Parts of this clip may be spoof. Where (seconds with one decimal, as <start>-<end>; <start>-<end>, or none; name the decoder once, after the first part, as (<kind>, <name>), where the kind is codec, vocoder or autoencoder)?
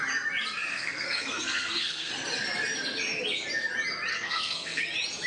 0.7-2.1 (codec, SNAC); 4.1-4.8